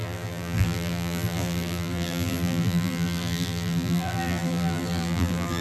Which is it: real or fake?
fake